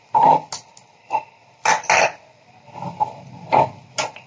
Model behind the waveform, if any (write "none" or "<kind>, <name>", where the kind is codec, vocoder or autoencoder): none